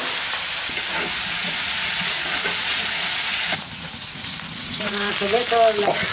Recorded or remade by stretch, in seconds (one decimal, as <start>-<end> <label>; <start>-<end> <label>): 0.0-1.4 recorded; 1.4-5.1 remade; 5.1-6.1 recorded